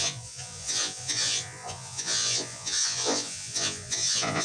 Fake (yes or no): yes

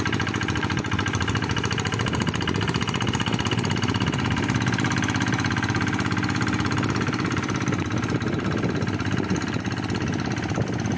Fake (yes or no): no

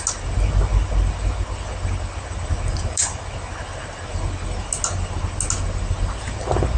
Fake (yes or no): no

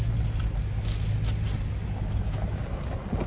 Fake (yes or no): no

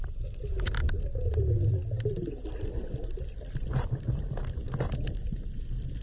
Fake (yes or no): no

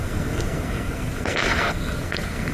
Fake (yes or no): yes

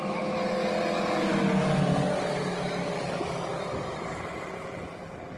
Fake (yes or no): no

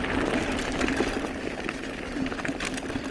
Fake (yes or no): no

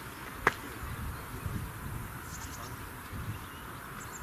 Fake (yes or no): no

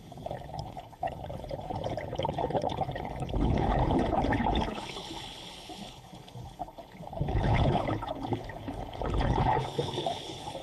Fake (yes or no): yes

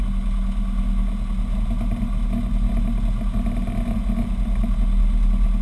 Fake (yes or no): no